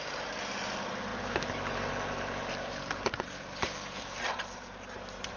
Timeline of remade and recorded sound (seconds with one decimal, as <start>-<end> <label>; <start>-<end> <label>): 0.0-5.4 remade

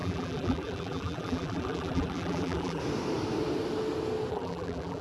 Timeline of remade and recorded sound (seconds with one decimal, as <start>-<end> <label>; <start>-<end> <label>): 0.0-2.8 remade; 2.8-4.3 recorded; 4.3-5.0 remade

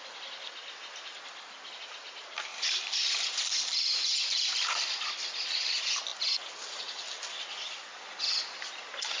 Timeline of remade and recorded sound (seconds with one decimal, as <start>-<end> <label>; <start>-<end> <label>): 0.0-2.5 recorded; 2.5-5.1 remade; 5.1-9.2 recorded

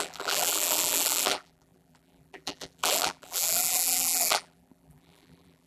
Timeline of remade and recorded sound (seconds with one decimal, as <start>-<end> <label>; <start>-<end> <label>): 0.0-5.7 remade

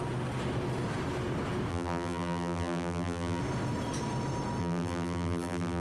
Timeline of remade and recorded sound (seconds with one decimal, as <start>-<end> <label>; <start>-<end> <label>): 0.0-1.7 recorded; 1.7-3.4 remade; 3.4-4.6 recorded; 4.6-5.8 remade